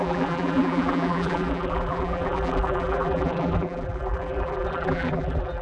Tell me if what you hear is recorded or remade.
remade